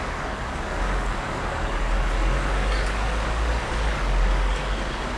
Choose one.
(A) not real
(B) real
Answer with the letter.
A